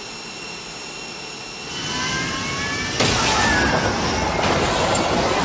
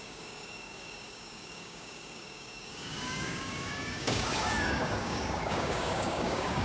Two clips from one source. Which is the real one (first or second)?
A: first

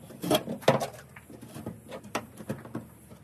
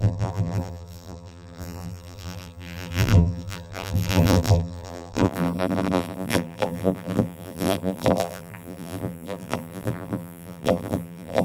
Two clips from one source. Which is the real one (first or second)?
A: first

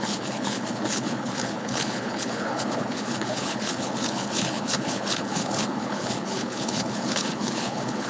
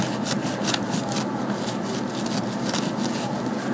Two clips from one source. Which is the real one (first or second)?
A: second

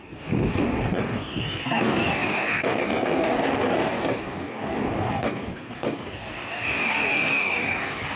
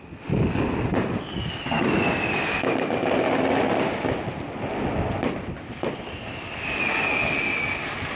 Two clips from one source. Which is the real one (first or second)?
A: second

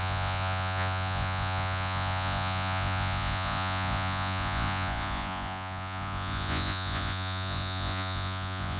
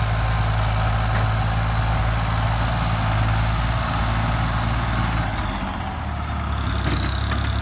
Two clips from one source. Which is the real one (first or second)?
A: second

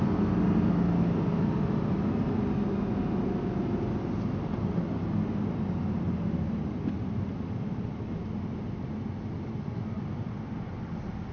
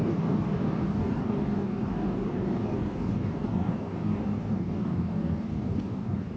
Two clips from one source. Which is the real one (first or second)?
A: first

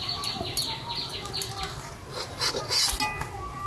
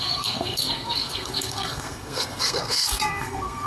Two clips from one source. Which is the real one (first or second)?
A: first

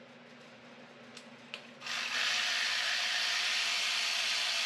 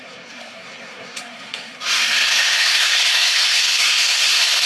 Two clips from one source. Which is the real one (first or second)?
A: first